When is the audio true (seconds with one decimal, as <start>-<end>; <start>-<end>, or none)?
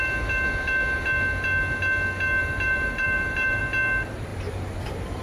0.0-2.4; 3.6-4.3